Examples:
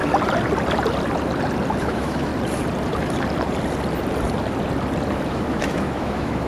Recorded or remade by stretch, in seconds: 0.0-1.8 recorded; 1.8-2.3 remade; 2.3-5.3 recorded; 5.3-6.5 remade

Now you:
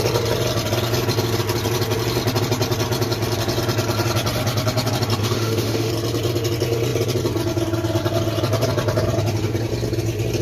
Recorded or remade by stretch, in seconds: 0.0-5.2 recorded; 5.2-5.9 remade; 5.9-10.4 recorded

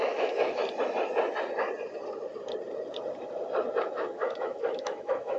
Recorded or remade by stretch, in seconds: 0.0-0.6 remade; 0.6-3.8 recorded; 3.8-5.4 remade

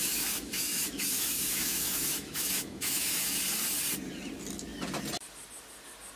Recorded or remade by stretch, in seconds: 0.0-3.4 remade; 3.4-6.2 recorded

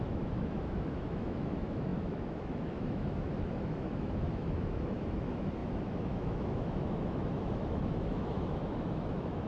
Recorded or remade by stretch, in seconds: 0.0-9.5 remade

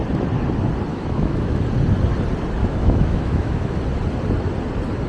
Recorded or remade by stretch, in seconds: 0.0-0.9 recorded; 0.9-1.6 remade; 1.6-2.6 recorded; 2.6-3.8 remade; 3.8-5.1 recorded

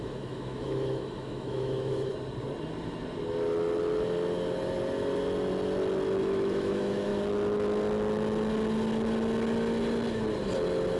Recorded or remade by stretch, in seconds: 0.0-2.1 remade; 2.1-6.2 recorded; 6.2-7.1 remade; 7.1-11.0 recorded

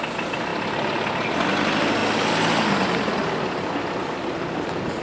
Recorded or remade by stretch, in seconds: 0.0-5.0 recorded